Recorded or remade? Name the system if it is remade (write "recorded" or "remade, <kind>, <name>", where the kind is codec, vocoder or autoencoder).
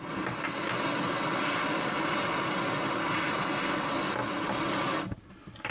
recorded